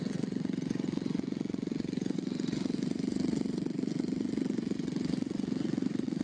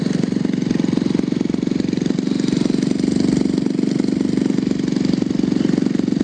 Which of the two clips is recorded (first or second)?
second